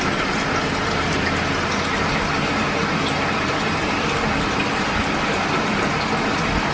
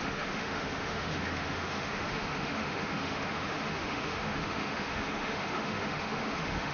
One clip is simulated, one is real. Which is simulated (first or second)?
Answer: second